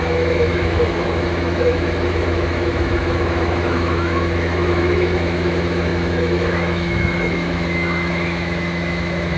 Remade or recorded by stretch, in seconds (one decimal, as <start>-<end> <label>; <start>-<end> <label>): 0.0-9.4 remade